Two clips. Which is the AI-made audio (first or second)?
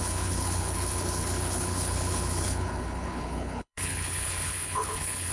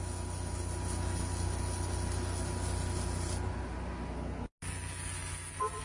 first